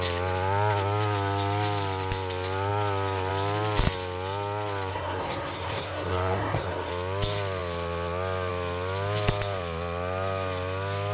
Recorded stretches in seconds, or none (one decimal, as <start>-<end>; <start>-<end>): 0.0-4.9; 6.9-11.1